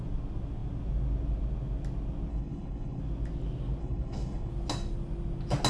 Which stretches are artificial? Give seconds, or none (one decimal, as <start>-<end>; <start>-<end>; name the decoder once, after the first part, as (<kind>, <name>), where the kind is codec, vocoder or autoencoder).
2.3-3.0 (codec, HILCodec); 3.8-4.5